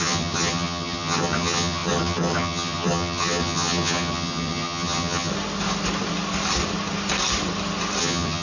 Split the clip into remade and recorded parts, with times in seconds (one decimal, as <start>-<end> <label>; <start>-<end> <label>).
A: 0.0-5.3 remade; 5.3-8.0 recorded; 8.0-8.4 remade